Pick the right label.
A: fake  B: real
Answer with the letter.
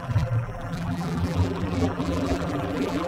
A